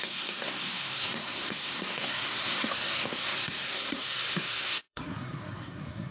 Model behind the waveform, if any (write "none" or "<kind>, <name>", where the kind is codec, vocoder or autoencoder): codec, SNAC